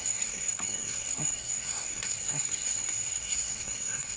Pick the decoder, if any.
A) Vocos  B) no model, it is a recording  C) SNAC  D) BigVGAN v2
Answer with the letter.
C